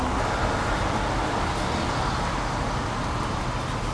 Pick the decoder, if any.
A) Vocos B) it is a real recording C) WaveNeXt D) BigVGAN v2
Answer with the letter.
B